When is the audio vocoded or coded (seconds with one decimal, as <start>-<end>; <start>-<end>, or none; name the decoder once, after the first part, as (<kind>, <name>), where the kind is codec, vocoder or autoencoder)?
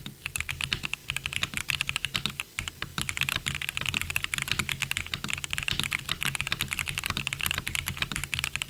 0.0-1.0 (vocoder, BigVGAN v2); 1.6-2.9; 6.0-8.7